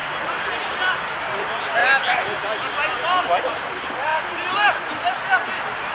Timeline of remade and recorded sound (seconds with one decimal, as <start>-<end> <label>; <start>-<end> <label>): 0.0-1.8 remade; 1.8-3.4 recorded; 3.4-5.9 remade

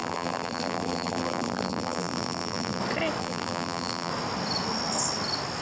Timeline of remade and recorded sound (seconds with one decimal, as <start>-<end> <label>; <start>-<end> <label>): 0.0-2.8 remade; 2.8-3.2 recorded; 3.2-4.1 remade; 4.1-5.6 recorded

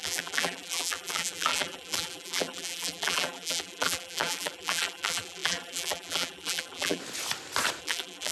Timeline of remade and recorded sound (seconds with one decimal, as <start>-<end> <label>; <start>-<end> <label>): 0.0-7.0 remade; 7.0-7.8 recorded; 7.8-8.3 remade

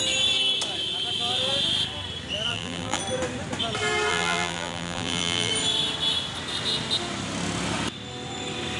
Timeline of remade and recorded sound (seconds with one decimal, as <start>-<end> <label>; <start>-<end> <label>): 0.0-2.5 recorded; 2.5-3.0 remade; 3.0-4.1 recorded; 4.1-5.5 remade; 5.5-8.8 recorded